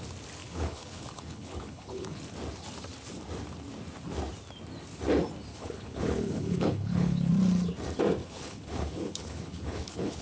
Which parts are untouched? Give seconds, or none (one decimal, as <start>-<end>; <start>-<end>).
0.0-0.4; 2.2-5.5; 7.3-8.2